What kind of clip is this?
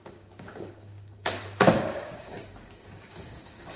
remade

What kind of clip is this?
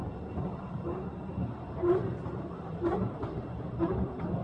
remade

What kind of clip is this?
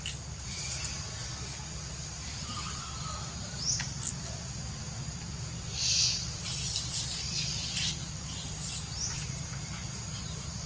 recorded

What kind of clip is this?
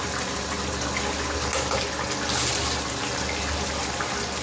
recorded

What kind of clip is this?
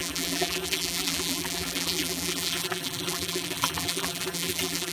remade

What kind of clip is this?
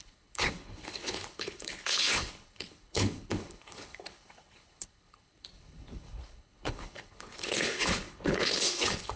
remade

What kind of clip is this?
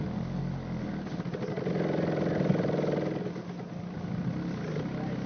recorded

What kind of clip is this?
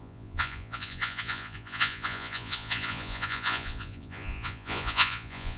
remade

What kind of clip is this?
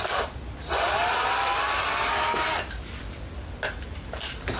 recorded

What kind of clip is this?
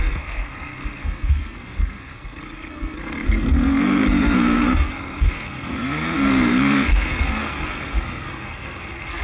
remade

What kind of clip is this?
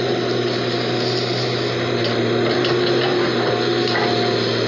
recorded